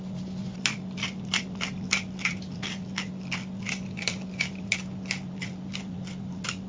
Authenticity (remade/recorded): recorded